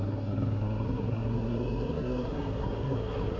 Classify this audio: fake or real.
fake